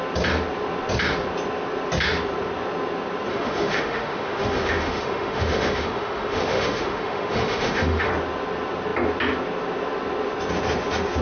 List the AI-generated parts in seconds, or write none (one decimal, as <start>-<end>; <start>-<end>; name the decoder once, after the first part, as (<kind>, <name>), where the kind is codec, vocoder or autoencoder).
3.3-8.1 (autoencoder, DAC-VAE)